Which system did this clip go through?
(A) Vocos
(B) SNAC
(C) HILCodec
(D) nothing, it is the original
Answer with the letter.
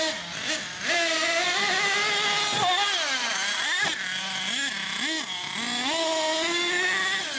D